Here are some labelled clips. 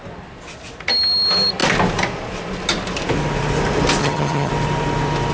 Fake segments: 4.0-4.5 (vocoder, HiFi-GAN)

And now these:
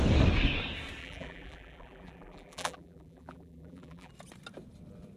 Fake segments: 1.0-4.1 (vocoder, BigVGAN v2)

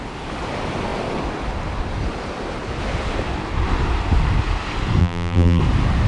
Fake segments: 5.0-5.6 (vocoder, BigVGAN v2)

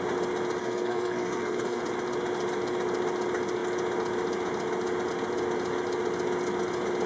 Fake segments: 0.6-1.8 (codec, SNAC)

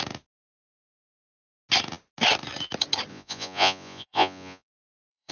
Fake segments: 3.1-5.3 (vocoder, Vocos)